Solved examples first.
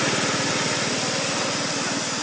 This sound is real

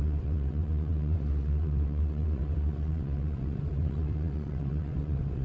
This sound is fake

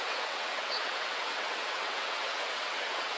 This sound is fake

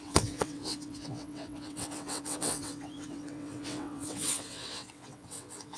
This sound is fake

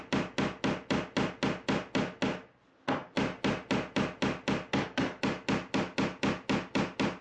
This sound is real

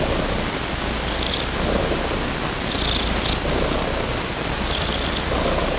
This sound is real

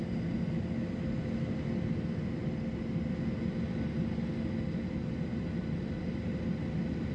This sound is real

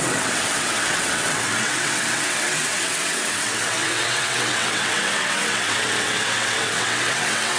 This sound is fake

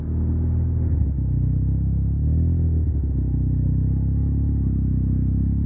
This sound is real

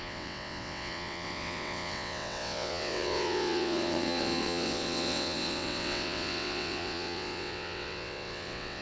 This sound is fake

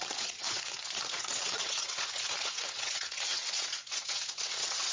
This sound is fake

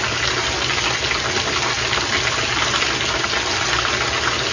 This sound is real